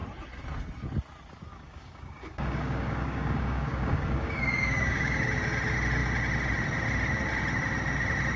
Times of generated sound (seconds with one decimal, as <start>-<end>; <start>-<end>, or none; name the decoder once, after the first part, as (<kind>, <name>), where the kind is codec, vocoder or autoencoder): 1.5-5.2 (codec, DAC)